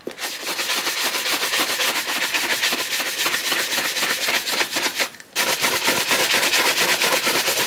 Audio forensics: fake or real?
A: fake